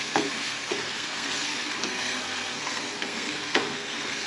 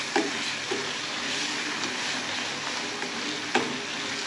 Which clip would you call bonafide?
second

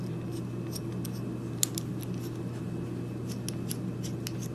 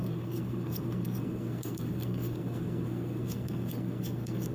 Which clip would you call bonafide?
first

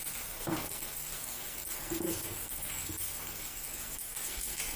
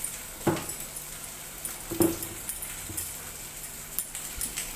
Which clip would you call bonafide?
second